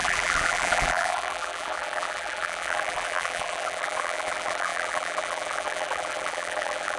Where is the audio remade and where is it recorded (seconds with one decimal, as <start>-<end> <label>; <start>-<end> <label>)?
0.0-7.0 remade